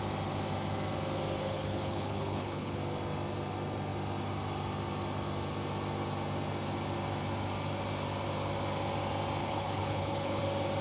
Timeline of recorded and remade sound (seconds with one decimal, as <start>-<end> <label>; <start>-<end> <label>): 0.0-1.4 recorded; 1.4-2.8 remade; 2.8-9.4 recorded; 9.4-10.4 remade; 10.4-10.8 recorded